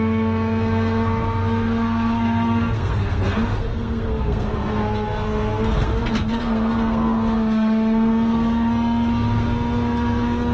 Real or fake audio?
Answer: fake